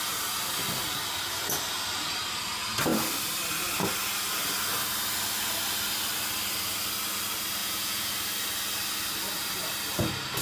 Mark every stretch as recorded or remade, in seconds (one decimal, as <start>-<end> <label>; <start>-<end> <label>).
0.0-7.6 recorded; 7.6-8.1 remade; 8.1-10.4 recorded